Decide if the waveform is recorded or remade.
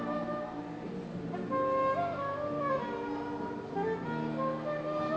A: recorded